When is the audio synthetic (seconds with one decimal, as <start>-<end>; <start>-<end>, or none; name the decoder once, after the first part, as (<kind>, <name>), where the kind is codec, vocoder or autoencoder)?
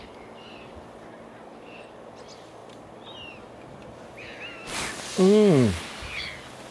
none